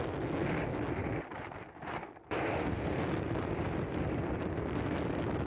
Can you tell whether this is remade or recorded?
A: recorded